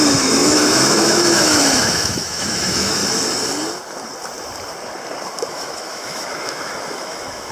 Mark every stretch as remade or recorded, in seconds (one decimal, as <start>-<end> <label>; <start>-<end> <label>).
0.0-3.0 remade; 3.0-5.5 recorded; 5.5-7.5 remade